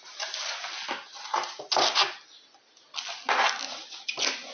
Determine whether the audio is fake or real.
real